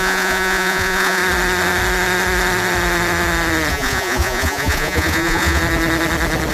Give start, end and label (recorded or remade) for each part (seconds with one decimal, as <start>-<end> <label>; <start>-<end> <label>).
0.0-1.2 remade; 1.2-3.7 recorded; 3.7-5.6 remade; 5.6-6.5 recorded